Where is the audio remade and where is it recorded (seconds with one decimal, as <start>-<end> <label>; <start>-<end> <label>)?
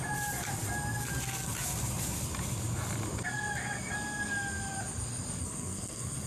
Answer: 0.0-5.4 recorded; 5.4-6.3 remade